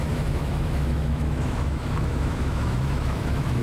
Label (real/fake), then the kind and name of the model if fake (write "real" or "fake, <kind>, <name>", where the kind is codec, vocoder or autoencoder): fake, autoencoder, DAC-VAE